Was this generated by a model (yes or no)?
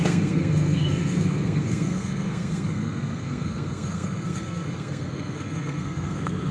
yes